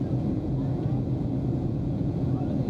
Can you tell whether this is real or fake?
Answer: fake